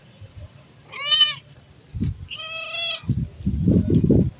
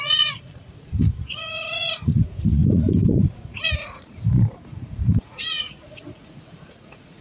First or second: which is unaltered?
first